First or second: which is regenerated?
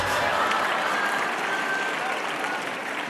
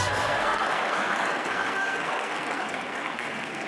second